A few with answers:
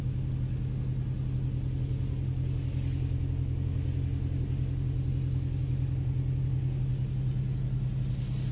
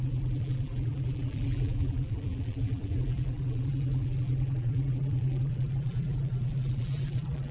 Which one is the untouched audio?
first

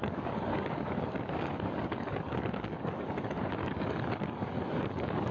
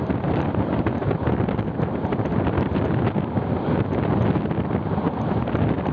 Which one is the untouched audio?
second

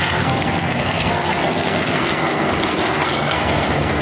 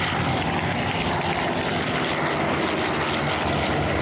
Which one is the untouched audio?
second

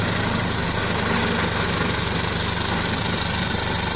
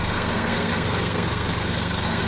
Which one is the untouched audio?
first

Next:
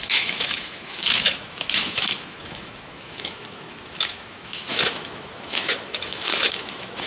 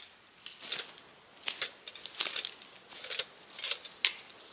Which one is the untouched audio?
second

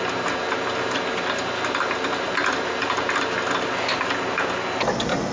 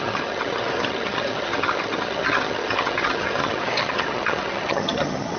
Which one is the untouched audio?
first